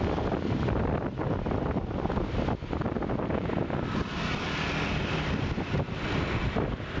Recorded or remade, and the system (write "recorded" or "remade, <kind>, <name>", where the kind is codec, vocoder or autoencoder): recorded